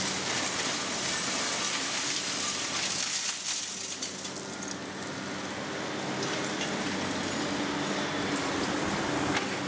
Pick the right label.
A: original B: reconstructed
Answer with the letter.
A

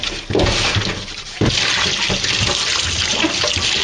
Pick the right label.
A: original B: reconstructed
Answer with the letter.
A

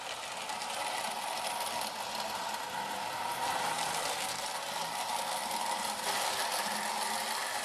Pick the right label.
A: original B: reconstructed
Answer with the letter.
A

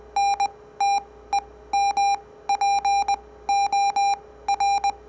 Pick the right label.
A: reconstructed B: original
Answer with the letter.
B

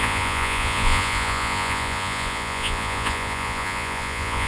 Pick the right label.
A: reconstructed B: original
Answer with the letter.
A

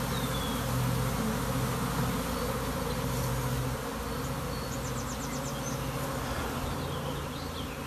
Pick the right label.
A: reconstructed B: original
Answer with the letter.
B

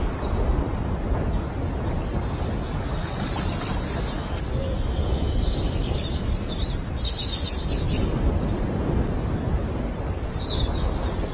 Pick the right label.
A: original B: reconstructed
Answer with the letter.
A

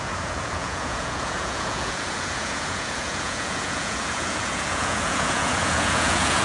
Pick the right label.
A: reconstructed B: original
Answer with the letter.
A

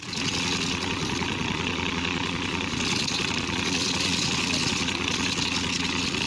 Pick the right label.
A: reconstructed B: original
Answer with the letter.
A